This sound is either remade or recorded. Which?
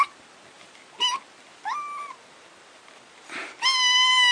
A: recorded